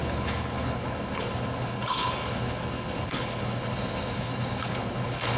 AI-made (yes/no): yes